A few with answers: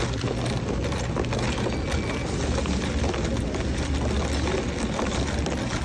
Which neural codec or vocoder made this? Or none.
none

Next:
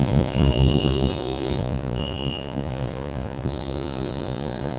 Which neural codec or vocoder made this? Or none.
vocoder, Vocos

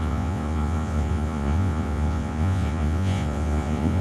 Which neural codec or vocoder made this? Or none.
vocoder, Vocos